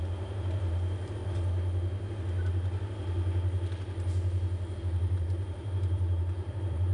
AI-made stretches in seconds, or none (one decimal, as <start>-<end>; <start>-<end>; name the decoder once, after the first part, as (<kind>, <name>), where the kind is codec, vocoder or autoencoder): 0.0-1.2 (vocoder, BigVGAN v2); 4.8-6.9